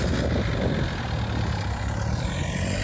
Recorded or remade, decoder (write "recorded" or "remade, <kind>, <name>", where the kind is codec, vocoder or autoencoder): recorded